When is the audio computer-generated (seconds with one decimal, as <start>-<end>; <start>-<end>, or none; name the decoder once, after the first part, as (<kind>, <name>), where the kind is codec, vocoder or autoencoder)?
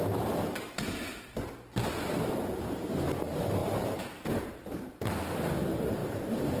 3.6-4.4 (vocoder, BigVGAN v2); 6.0-6.6